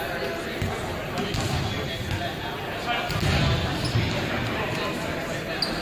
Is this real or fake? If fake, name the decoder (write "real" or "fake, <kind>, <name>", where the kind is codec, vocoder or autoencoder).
real